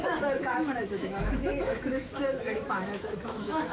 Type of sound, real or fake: fake